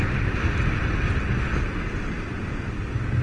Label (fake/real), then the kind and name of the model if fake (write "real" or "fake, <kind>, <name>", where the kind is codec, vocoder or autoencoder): real